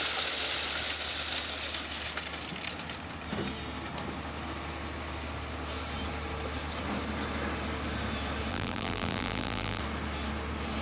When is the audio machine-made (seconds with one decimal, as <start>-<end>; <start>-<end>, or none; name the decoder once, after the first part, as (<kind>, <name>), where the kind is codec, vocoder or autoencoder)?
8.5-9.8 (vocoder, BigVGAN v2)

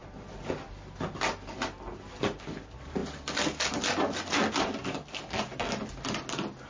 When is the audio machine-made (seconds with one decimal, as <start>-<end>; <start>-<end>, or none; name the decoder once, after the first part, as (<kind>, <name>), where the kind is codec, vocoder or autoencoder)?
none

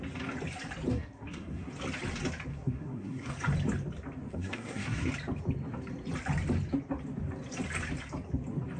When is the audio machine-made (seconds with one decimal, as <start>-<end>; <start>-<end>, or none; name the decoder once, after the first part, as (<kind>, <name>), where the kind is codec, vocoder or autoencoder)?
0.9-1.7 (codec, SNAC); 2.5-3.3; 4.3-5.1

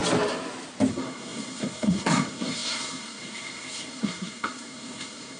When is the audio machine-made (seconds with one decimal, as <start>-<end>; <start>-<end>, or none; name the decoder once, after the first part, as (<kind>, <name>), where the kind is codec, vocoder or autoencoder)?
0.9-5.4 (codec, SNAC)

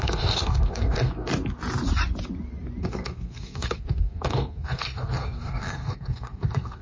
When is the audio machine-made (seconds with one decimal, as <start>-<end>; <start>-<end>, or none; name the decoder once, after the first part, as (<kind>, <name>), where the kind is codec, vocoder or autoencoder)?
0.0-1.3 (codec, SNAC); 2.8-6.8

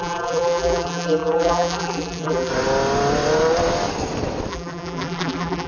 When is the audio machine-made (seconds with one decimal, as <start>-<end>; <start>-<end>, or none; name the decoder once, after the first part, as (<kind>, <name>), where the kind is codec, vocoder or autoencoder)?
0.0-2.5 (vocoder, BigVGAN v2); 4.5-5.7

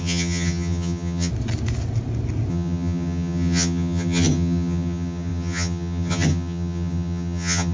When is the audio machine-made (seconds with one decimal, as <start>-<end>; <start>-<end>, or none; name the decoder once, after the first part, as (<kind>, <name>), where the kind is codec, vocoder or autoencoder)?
0.0-1.3 (vocoder, HiFi-GAN); 2.5-7.7

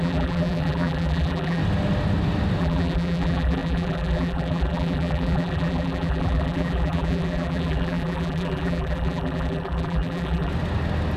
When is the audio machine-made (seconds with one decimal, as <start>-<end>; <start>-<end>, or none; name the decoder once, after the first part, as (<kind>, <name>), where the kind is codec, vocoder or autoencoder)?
0.0-1.6 (vocoder, BigVGAN v2); 2.6-10.5